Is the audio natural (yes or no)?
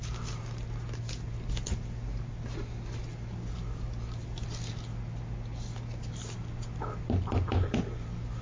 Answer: yes